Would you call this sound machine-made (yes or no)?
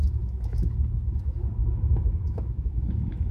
yes